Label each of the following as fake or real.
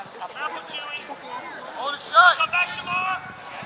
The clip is real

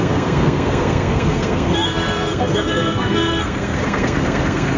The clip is fake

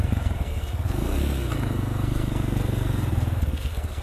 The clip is fake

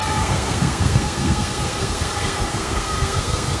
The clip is fake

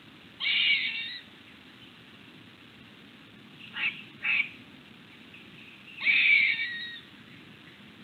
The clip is real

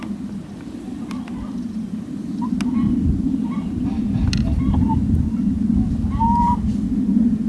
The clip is real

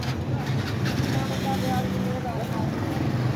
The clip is real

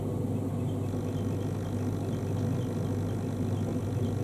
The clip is real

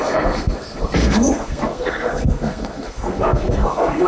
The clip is fake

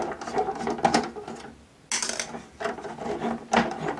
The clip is real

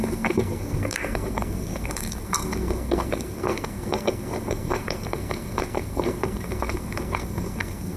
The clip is fake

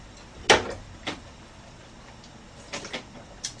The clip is real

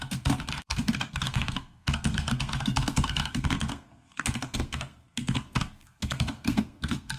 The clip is fake